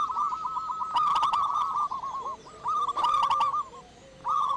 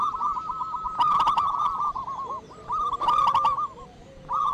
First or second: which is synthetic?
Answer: second